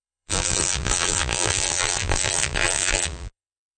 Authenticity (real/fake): fake